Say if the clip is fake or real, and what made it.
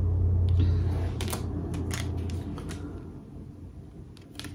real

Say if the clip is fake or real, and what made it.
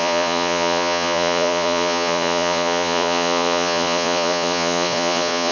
fake, vocoder, Vocos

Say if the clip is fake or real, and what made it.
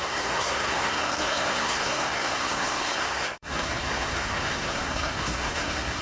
fake, codec, SNAC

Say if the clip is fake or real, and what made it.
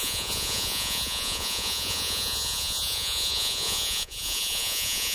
fake, vocoder, Vocos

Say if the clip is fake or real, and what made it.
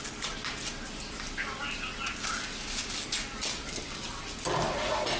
real